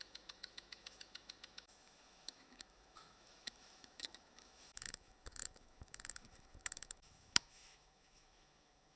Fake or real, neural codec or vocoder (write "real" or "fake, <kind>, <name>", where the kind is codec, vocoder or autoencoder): fake, autoencoder, DAC-VAE